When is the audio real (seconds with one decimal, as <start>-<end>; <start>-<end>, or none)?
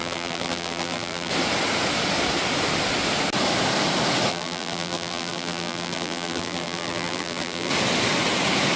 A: 1.3-4.3; 7.7-8.8